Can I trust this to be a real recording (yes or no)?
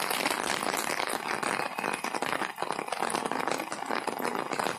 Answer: yes